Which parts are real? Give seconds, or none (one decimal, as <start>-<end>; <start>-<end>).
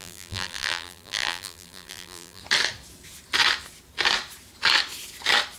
2.4-5.6